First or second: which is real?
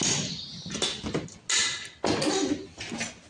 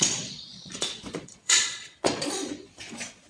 first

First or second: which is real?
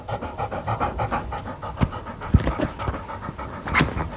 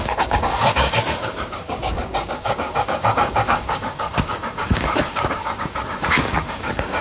first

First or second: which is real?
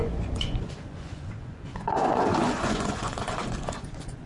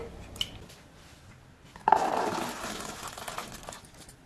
second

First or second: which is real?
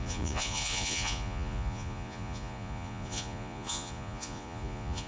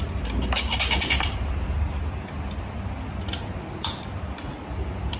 second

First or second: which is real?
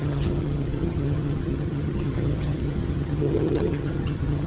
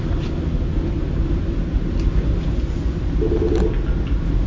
second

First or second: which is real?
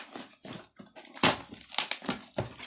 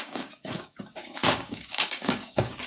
first